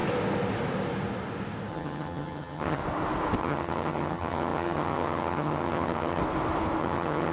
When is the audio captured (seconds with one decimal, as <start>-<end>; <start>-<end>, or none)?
0.0-1.7; 2.8-3.4; 6.2-6.8